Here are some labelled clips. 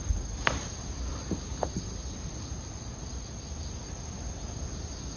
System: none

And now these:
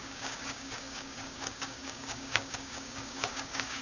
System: codec, DAC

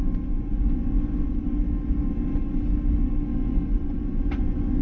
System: none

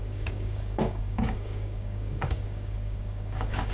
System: codec, DAC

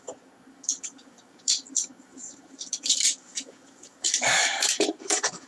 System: codec, DAC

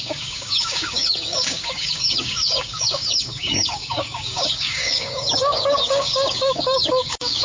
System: codec, DAC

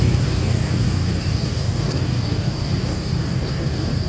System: codec, DAC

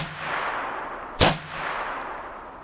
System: none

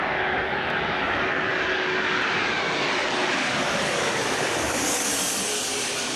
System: codec, DAC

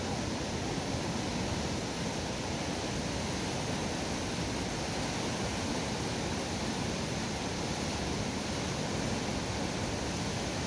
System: none